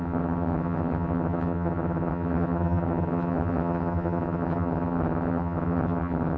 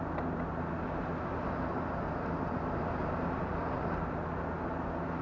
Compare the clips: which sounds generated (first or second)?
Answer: first